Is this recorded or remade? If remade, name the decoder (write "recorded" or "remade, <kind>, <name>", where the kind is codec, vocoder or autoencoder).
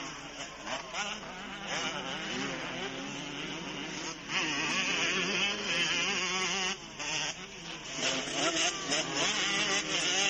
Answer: recorded